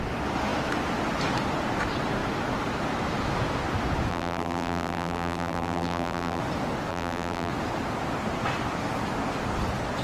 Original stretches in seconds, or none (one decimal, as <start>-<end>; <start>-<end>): 0.0-4.1; 6.4-6.9; 7.5-10.0